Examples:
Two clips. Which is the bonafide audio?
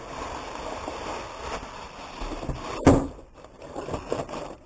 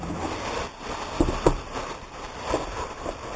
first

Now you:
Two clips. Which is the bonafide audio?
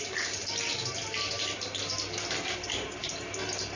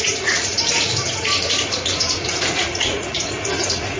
first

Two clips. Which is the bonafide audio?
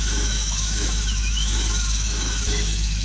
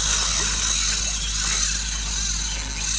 second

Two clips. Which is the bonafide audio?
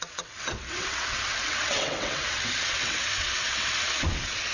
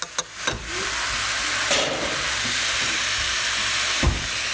second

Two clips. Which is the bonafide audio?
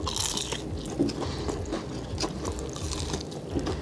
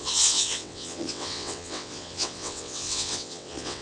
first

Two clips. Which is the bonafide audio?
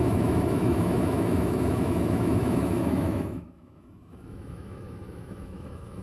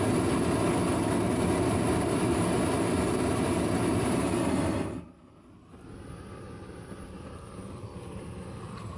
second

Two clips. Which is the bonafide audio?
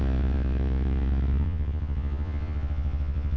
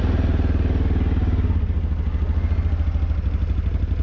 second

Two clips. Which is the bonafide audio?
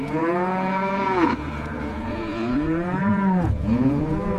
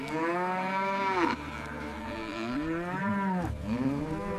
second